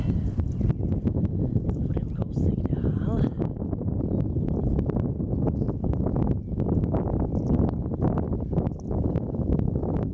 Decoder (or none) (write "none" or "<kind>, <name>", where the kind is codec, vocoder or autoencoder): none